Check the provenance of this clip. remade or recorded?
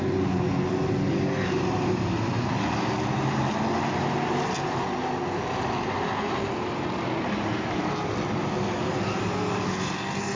recorded